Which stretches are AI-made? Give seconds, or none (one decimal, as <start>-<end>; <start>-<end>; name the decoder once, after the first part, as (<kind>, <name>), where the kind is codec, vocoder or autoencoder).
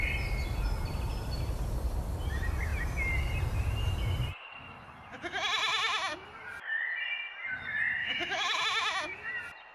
8.0-8.6 (autoencoder, DAC-VAE)